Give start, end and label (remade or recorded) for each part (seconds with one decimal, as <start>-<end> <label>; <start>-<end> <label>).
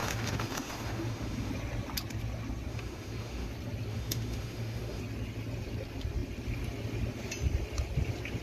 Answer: 0.0-1.5 remade; 1.5-2.7 recorded; 2.7-3.5 remade; 3.5-3.9 recorded; 3.9-5.0 remade; 5.0-8.4 recorded